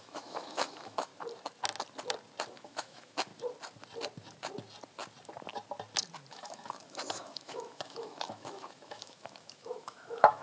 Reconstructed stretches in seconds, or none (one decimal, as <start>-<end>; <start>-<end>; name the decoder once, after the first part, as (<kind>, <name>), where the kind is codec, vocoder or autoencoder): 0.0-1.1 (autoencoder, DAC-VAE); 2.5-3.3; 6.3-10.4